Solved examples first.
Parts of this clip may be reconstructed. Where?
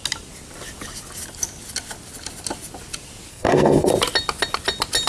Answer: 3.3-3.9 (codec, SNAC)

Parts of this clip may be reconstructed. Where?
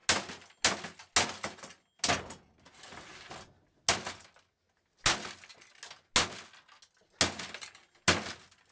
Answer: none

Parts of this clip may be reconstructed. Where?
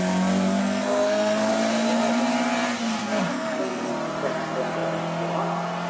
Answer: 0.6-1.5 (codec, SNAC); 3.3-3.9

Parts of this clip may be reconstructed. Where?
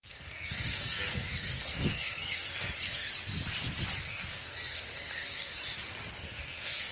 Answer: 0.0-3.1 (codec, SNAC); 4.0-5.6; 6.2-6.9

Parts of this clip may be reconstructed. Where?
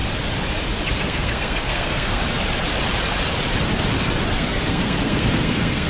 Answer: 1.0-2.2 (codec, SNAC); 4.3-5.9